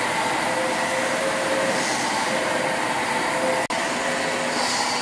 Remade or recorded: recorded